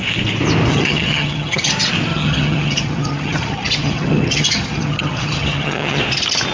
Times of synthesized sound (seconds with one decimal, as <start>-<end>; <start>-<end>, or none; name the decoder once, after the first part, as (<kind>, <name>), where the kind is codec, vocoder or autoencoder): 0.7-1.7 (vocoder, HiFi-GAN); 2.1-6.0